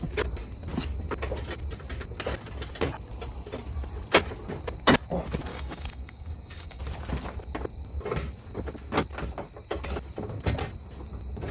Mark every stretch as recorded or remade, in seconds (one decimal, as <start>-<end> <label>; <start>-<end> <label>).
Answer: 0.0-5.5 recorded; 5.5-6.8 remade; 6.8-11.5 recorded